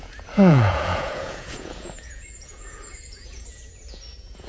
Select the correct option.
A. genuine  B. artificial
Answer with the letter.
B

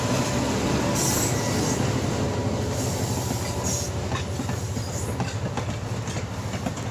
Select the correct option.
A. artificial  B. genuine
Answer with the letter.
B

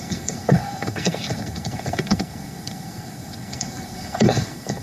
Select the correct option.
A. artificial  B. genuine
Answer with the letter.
A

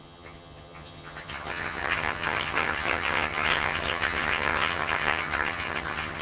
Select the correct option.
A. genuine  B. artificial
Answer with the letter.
B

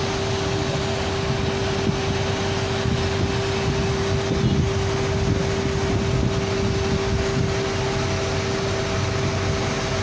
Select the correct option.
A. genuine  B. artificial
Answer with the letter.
A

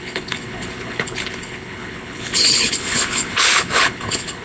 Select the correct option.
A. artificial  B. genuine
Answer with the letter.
A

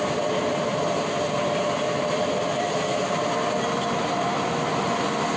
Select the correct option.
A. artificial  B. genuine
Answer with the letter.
B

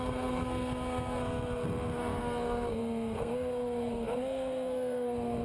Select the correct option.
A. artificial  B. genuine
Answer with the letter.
A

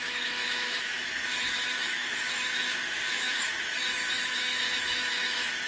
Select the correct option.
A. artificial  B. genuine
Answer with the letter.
A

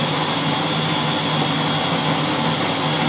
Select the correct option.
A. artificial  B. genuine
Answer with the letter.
B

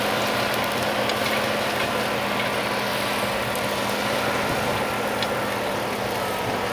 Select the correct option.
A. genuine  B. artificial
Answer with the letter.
A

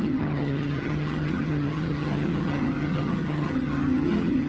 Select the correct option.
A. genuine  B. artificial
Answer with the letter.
B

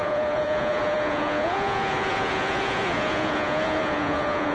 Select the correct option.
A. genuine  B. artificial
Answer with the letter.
B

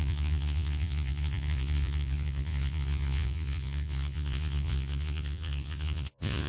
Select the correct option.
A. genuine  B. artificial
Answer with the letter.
B